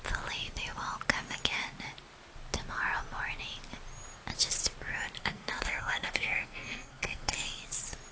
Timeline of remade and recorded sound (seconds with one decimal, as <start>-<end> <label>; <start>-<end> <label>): 0.0-5.2 recorded; 5.2-7.6 remade; 7.6-8.1 recorded